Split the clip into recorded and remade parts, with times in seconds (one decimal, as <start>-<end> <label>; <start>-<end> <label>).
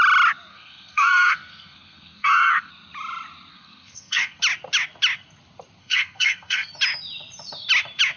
0.0-0.5 recorded; 0.5-2.7 remade; 2.7-3.5 recorded; 3.5-4.4 remade; 4.4-5.8 recorded; 5.8-6.7 remade; 6.7-8.2 recorded